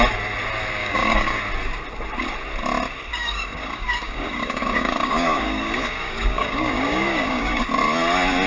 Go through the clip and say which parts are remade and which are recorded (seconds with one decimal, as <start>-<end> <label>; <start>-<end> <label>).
0.0-0.8 recorded; 0.8-1.4 remade; 1.4-3.1 recorded; 3.1-7.7 remade; 7.7-8.5 recorded